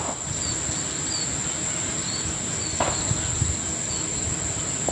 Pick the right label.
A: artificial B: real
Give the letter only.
B